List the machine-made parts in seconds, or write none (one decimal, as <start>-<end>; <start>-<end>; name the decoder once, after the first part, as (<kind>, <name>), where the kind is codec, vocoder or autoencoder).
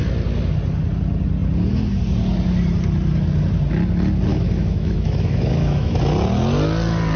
4.3-6.0 (autoencoder, DAC-VAE)